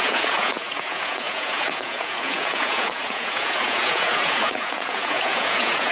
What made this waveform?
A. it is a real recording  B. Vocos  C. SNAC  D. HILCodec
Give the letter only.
B